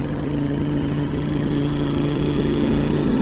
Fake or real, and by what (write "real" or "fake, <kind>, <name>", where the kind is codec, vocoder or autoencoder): fake, vocoder, HiFi-GAN